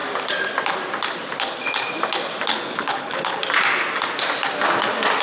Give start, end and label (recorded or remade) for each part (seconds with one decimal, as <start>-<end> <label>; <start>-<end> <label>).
0.0-2.5 recorded; 2.5-3.4 remade; 3.4-5.2 recorded